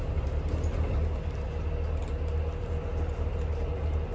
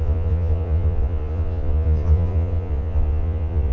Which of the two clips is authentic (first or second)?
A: first